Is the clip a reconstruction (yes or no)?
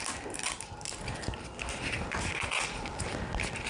no